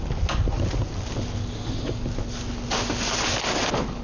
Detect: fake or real real